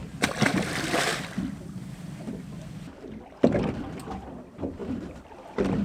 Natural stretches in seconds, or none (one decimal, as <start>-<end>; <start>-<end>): none